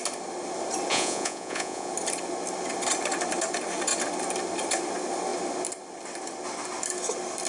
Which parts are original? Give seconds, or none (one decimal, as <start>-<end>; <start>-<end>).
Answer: 0.0-0.9; 1.9-7.5